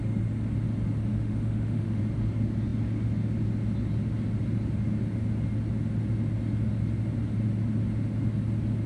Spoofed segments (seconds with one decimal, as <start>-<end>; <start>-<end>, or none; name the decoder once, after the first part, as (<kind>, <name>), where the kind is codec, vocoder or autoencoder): 1.1-2.0 (autoencoder, DAC-VAE)